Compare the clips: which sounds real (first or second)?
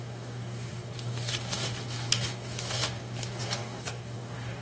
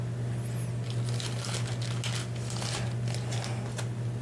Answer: second